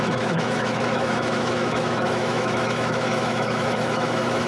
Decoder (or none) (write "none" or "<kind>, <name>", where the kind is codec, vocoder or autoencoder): autoencoder, DAC-VAE